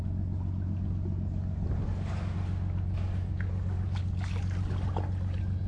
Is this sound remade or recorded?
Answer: recorded